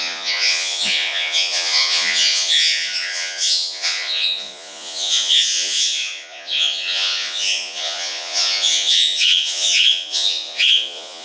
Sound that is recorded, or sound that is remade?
remade